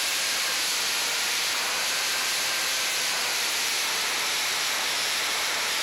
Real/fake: fake